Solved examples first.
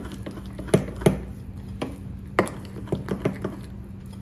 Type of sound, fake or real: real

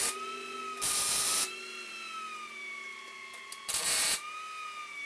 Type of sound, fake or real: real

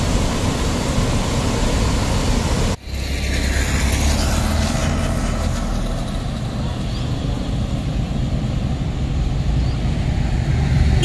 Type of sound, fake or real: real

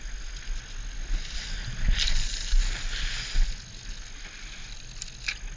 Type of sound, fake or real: real